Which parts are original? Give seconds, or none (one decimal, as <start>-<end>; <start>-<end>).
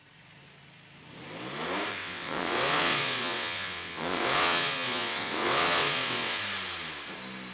0.0-1.9; 6.4-7.5